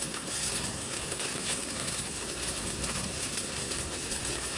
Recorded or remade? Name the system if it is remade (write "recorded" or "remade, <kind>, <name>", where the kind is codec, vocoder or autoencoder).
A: remade, codec, SNAC